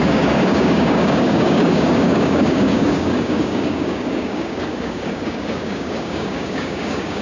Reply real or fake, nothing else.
fake